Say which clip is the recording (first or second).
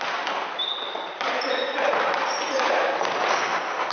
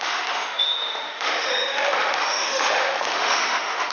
first